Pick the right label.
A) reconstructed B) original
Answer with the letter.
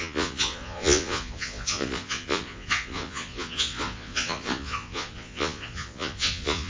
A